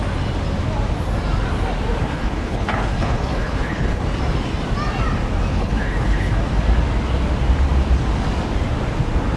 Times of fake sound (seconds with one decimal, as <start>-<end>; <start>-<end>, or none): 2.0-4.0; 5.5-6.4